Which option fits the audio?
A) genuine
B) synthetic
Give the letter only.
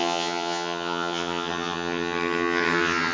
B